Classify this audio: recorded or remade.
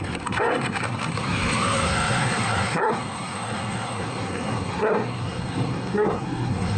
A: remade